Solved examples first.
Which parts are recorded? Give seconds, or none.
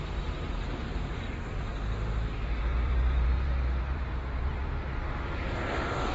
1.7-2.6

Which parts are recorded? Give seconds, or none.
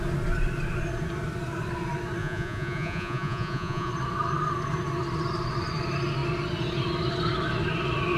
0.0-2.2; 3.9-8.2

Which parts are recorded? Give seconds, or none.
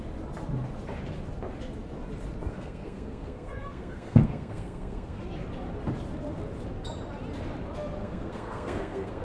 0.0-2.5; 5.2-8.0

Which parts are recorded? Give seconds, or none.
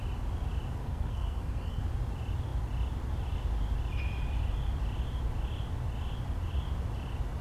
0.0-0.8; 1.8-7.4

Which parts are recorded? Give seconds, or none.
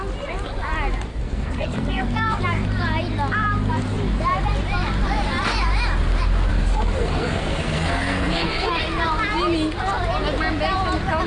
0.0-1.1; 2.4-6.5; 8.8-11.3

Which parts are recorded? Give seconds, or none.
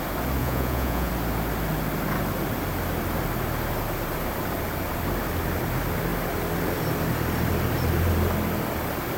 0.0-0.4; 1.1-9.2